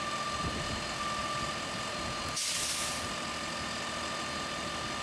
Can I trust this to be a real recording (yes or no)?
yes